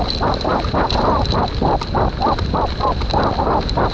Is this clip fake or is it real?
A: real